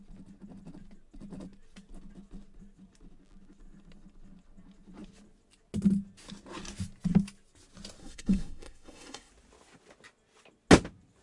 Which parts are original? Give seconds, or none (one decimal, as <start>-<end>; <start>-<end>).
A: 0.0-8.0; 9.3-11.2